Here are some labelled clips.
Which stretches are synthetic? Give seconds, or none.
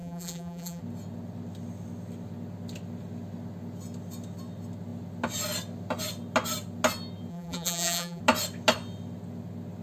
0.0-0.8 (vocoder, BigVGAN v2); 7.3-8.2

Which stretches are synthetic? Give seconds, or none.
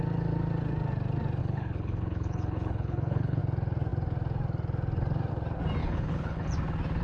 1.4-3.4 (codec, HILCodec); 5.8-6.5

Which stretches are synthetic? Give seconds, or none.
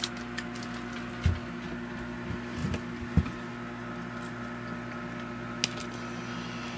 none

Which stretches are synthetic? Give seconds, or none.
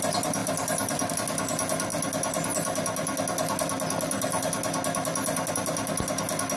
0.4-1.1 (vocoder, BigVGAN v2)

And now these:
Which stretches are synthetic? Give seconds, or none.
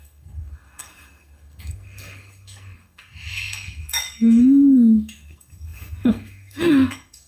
0.0-7.3 (codec, SNAC)